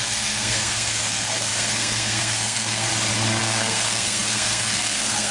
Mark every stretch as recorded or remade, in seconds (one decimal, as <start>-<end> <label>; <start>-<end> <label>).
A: 0.0-2.9 remade; 2.9-3.4 recorded; 3.4-5.3 remade

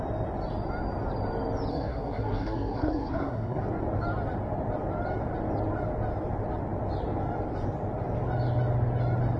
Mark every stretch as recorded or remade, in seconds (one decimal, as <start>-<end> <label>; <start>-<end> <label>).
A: 0.0-1.7 recorded; 1.7-3.6 remade; 3.6-9.4 recorded

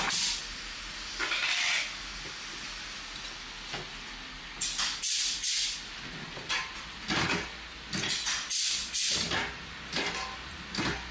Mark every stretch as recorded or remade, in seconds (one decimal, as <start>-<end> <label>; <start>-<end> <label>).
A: 0.0-11.1 recorded

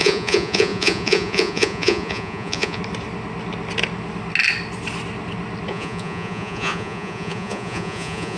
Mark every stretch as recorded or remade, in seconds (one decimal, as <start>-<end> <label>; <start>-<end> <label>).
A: 0.0-2.8 remade; 2.8-5.7 recorded; 5.7-8.4 remade

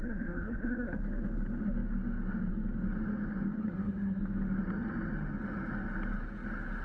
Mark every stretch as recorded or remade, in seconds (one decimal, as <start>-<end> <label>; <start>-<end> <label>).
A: 0.0-1.0 remade; 1.0-3.6 recorded; 3.6-4.2 remade; 4.2-6.8 recorded

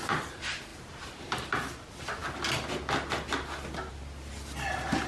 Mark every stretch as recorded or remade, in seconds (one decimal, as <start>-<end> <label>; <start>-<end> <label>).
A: 0.0-5.1 recorded

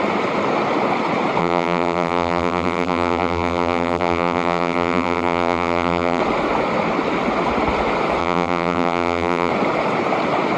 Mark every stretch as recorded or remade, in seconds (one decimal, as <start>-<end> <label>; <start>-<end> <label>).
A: 0.0-1.4 recorded; 1.4-6.2 remade; 6.2-8.2 recorded; 8.2-9.5 remade; 9.5-10.6 recorded

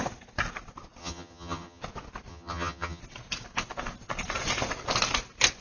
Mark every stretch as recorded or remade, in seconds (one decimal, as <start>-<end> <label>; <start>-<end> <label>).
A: 0.0-1.0 recorded; 1.0-1.8 remade; 1.8-2.3 recorded; 2.3-3.0 remade; 3.0-5.6 recorded